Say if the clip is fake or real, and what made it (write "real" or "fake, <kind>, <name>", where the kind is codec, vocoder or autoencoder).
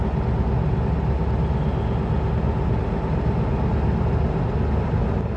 real